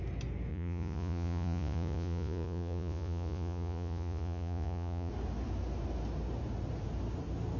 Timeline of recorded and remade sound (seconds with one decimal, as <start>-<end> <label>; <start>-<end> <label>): 0.0-0.5 recorded; 0.5-5.1 remade; 5.1-7.6 recorded